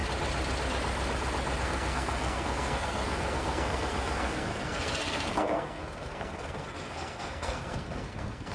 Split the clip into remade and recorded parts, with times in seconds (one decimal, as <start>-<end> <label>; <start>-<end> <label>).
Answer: 0.0-1.6 recorded; 1.6-8.5 remade